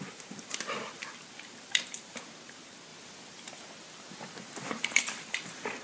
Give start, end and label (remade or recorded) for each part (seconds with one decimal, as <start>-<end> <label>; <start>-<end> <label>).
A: 0.0-2.9 remade; 2.9-4.7 recorded; 4.7-5.8 remade